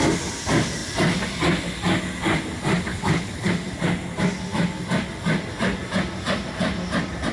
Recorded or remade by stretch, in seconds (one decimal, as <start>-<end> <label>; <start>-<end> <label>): 0.0-2.9 recorded; 2.9-3.5 remade; 3.5-7.3 recorded